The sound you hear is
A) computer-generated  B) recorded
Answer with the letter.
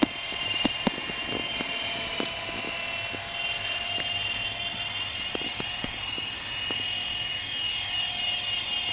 B